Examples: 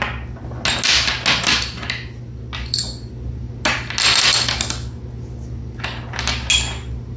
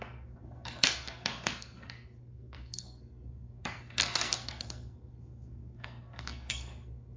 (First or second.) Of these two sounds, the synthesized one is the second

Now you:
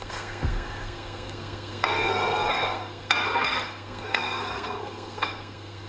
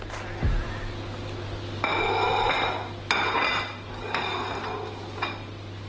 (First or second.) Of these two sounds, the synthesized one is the first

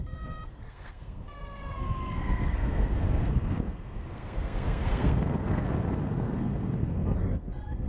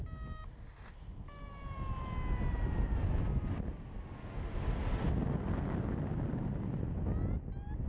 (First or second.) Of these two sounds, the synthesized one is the first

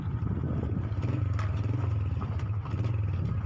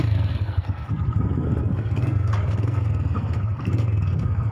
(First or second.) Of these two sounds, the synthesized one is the second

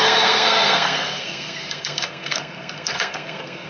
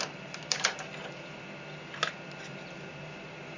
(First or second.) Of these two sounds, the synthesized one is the first